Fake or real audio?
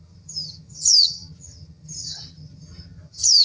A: fake